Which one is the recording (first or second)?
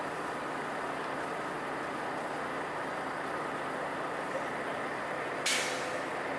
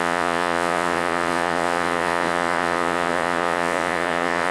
first